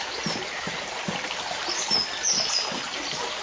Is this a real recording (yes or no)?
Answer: yes